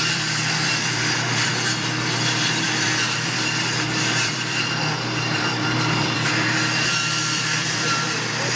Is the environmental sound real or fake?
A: fake